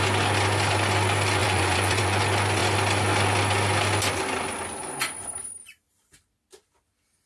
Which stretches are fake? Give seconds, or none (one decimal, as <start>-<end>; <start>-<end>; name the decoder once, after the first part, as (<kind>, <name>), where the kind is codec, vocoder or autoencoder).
1.4-2.2 (vocoder, Vocos)